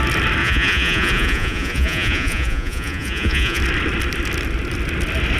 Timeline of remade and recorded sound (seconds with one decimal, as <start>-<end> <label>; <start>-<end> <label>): 0.0-0.4 recorded; 0.4-3.6 remade; 3.6-5.4 recorded